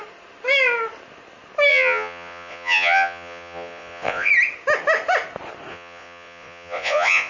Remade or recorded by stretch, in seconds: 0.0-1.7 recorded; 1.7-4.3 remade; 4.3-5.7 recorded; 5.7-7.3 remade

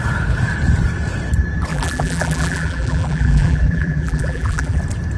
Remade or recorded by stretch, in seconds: 0.0-1.7 recorded; 1.7-4.8 remade; 4.8-5.2 recorded

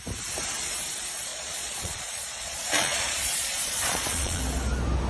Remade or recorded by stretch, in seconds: 0.0-1.3 recorded; 1.3-4.4 remade; 4.4-5.1 recorded

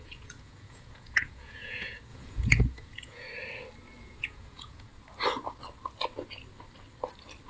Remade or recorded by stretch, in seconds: 0.0-3.3 remade; 3.3-4.0 recorded; 4.0-4.9 remade; 4.9-7.5 recorded

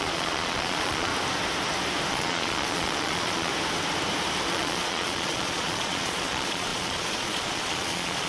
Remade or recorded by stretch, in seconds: 0.0-1.1 remade; 1.1-2.1 recorded; 2.1-3.5 remade; 3.5-4.5 recorded; 4.5-8.3 remade

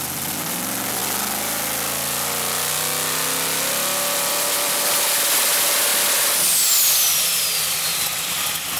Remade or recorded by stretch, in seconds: 0.0-8.8 recorded